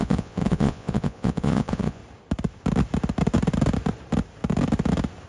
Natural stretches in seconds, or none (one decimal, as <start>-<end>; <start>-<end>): 2.0-5.3